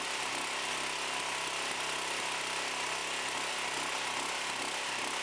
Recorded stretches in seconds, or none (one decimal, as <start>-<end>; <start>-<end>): 0.0-5.2